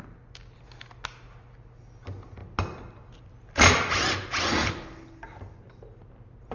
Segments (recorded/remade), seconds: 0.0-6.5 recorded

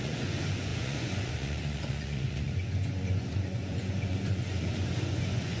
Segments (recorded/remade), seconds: 0.0-5.6 remade

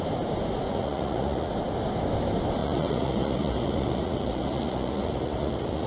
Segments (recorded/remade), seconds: 0.0-0.7 recorded; 0.7-1.5 remade; 1.5-2.6 recorded; 2.6-5.9 remade

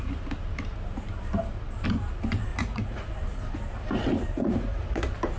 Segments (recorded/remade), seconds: 0.0-2.5 recorded; 2.5-3.1 remade; 3.1-4.3 recorded; 4.3-5.0 remade; 5.0-5.4 recorded

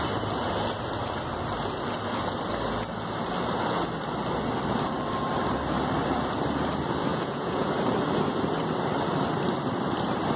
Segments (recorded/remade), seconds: 0.0-7.1 recorded; 7.1-7.7 remade; 7.7-10.4 recorded

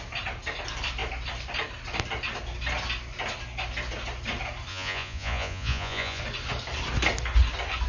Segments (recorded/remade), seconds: 0.0-4.7 recorded; 4.7-6.2 remade; 6.2-7.9 recorded

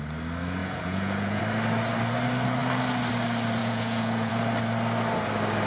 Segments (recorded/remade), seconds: 0.0-0.6 recorded; 0.6-1.4 remade; 1.4-3.6 recorded; 3.6-4.3 remade; 4.3-5.7 recorded

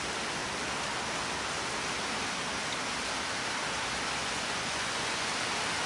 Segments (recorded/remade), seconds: 0.0-4.2 recorded; 4.2-5.3 remade; 5.3-5.9 recorded